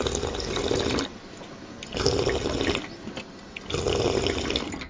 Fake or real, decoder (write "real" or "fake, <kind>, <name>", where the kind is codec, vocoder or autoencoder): real